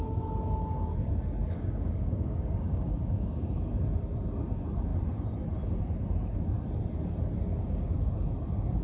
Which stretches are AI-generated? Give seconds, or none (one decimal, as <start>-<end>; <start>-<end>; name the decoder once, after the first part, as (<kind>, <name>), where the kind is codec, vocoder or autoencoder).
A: 1.4-3.6 (codec, DAC); 7.5-8.1